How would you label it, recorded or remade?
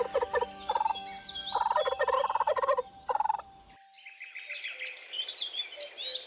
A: recorded